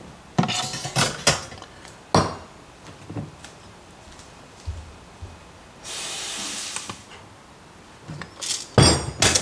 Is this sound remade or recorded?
recorded